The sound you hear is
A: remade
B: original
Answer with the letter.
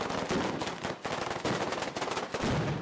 B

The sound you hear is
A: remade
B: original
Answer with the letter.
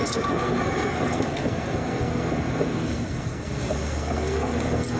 A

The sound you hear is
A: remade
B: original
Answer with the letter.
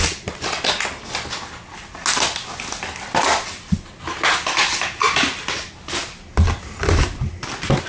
B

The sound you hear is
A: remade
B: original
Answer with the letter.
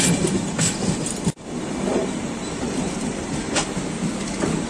B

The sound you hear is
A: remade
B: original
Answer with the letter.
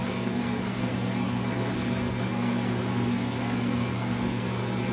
A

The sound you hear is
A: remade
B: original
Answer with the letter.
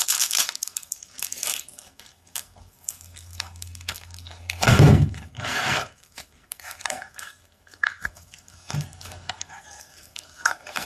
A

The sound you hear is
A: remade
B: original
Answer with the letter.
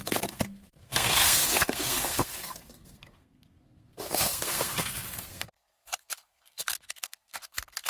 A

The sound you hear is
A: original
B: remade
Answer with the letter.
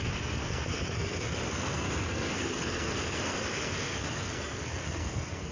B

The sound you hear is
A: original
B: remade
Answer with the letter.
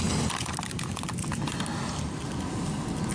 A